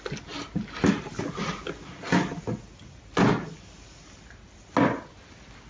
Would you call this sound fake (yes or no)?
no